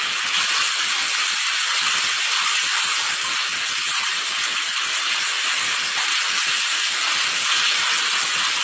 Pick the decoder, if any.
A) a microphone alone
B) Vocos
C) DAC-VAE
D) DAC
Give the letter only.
A